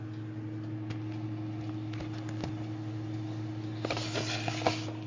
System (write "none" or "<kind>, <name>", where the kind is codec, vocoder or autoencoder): none